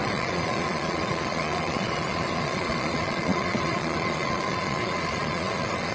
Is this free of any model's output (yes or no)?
no